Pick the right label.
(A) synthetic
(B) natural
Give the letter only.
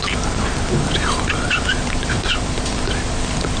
B